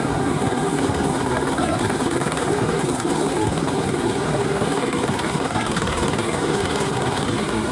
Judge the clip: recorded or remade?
remade